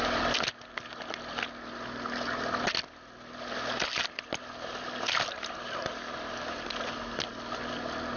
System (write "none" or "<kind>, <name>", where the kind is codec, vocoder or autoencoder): none